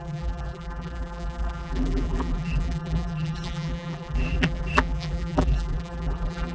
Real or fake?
fake